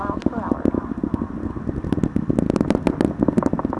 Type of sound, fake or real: real